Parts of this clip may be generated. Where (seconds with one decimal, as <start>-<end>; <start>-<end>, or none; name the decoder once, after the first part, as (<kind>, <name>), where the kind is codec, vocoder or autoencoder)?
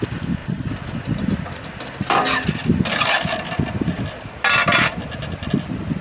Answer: none